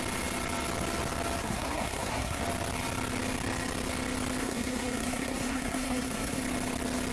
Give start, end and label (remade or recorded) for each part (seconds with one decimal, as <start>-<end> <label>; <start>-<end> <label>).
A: 0.0-1.4 recorded; 1.4-2.4 remade; 2.4-4.4 recorded; 4.4-6.4 remade; 6.4-7.1 recorded